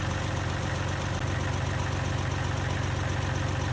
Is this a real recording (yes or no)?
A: yes